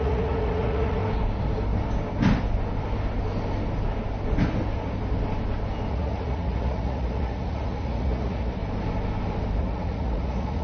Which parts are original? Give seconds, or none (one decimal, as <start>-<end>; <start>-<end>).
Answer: 1.0-5.9; 8.6-9.6